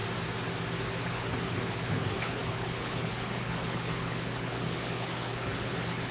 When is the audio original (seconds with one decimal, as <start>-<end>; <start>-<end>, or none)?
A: 0.0-0.8